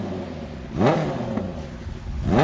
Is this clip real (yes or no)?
yes